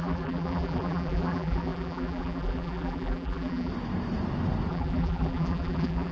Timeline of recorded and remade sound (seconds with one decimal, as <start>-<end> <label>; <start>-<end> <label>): 0.0-3.7 remade; 3.7-4.7 recorded; 4.7-6.1 remade